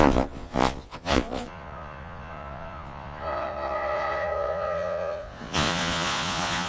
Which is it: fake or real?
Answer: fake